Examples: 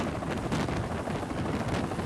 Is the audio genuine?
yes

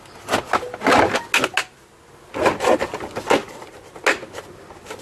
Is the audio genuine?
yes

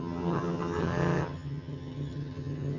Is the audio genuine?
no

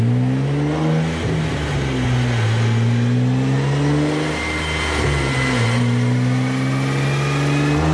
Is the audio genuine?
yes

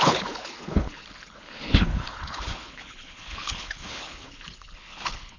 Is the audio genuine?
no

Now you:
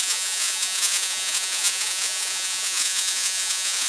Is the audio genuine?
no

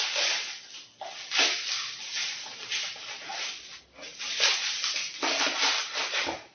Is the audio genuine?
yes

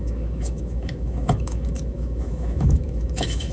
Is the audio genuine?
no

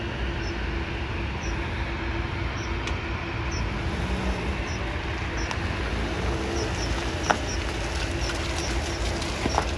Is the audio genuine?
yes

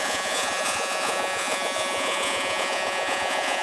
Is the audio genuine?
no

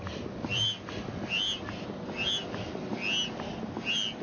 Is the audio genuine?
yes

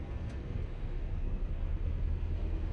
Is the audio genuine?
no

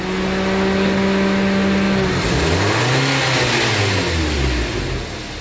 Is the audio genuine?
yes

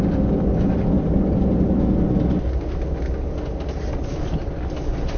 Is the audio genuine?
yes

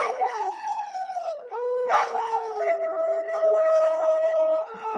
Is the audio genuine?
no